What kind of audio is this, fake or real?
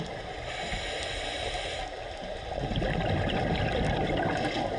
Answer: real